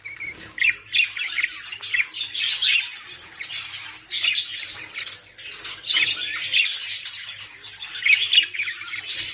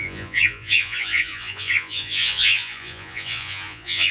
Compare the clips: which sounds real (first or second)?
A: first